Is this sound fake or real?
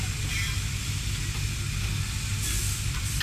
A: real